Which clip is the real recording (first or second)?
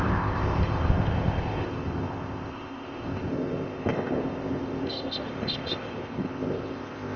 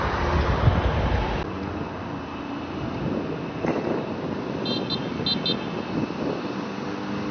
second